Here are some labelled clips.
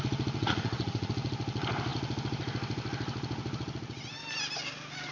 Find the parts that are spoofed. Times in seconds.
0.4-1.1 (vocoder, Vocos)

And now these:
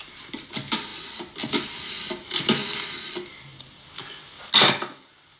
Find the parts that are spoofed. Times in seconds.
none

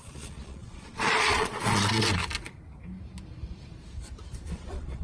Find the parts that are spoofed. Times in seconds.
0.0-2.2 (vocoder, Vocos); 4.5-5.0

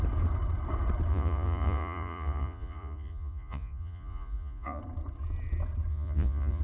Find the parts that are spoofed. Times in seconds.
1.1-4.8 (vocoder, Vocos); 5.9-6.6

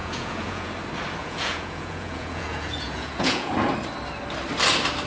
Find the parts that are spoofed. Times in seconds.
0.0-0.7 (vocoder, Vocos); 1.2-3.5

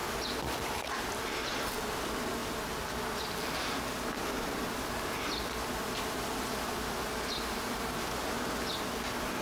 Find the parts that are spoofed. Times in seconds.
none